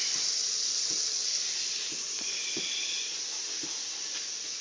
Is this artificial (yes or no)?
no